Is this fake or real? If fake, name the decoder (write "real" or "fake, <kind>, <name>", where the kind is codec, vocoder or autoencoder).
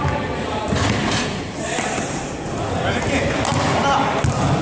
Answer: real